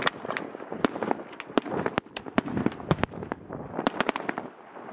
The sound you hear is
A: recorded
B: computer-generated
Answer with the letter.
A